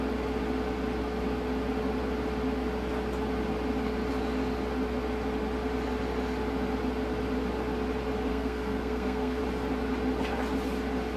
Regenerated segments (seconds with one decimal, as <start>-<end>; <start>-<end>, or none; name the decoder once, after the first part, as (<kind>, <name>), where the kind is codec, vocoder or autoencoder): 8.3-9.4 (codec, SNAC)

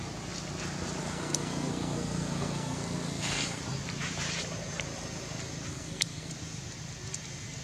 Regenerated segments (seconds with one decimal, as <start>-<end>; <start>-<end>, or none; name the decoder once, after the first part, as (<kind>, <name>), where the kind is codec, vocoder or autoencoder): 1.0-3.6 (codec, SNAC); 5.7-6.3

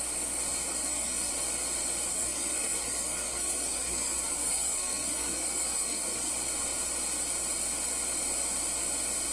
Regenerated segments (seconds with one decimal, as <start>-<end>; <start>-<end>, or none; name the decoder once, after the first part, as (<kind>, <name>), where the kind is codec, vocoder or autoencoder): 0.7-1.3 (codec, SNAC); 2.1-6.3

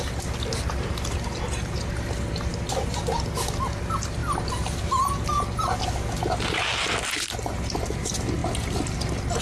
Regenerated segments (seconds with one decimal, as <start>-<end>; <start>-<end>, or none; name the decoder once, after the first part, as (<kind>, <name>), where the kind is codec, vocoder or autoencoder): none

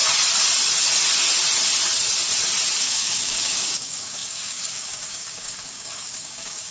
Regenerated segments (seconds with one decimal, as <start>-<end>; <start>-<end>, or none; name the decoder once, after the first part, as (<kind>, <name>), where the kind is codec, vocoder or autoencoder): 2.8-6.7 (codec, DAC)

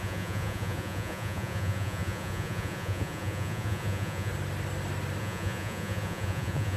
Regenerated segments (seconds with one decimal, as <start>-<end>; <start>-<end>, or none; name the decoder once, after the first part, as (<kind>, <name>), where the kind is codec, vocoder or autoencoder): 0.0-4.3 (vocoder, Vocos); 5.2-6.8

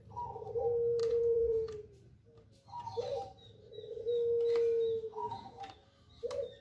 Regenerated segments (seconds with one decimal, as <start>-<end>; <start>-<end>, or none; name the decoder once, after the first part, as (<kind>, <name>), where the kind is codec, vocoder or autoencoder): 1.0-1.7 (vocoder, Vocos); 5.1-5.6

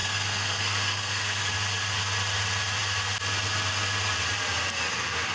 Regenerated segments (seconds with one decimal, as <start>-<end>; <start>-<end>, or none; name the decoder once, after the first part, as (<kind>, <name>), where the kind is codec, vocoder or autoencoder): 0.0-1.5 (codec, SNAC)